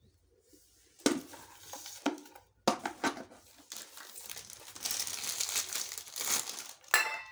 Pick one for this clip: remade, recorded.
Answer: recorded